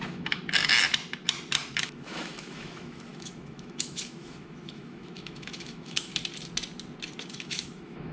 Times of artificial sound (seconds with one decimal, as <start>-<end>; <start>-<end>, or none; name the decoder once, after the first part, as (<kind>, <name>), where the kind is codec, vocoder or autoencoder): 0.0-0.4 (autoencoder, DAC-VAE); 1.8-6.1; 7.3-8.1

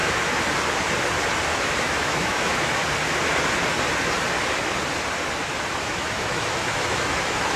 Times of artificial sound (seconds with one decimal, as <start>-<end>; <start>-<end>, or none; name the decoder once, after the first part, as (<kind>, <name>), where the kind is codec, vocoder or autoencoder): 1.8-2.8 (autoencoder, DAC-VAE); 5.8-7.6

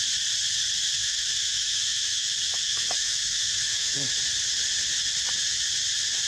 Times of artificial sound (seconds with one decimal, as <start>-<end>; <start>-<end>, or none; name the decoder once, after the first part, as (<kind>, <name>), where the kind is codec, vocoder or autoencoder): 1.0-4.2 (autoencoder, DAC-VAE)

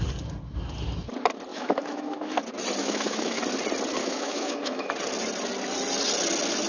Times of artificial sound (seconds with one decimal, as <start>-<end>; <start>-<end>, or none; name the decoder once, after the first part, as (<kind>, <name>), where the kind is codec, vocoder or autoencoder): 1.5-2.4 (autoencoder, DAC-VAE); 2.8-3.4; 4.0-4.9

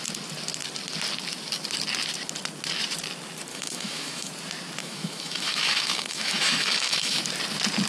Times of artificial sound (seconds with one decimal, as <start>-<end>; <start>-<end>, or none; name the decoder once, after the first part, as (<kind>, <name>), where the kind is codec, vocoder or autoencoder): 3.5-4.3 (autoencoder, DAC-VAE); 4.8-7.2

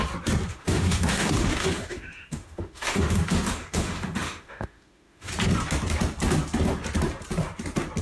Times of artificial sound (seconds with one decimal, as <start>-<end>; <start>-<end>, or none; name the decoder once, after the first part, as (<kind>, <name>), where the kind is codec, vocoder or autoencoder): 0.5-5.3 (autoencoder, DAC-VAE)

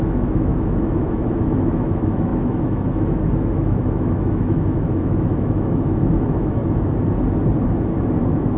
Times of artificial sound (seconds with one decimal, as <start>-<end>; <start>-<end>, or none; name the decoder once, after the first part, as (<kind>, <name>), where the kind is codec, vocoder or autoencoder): 0.0-6.6 (autoencoder, DAC-VAE); 8.2-8.6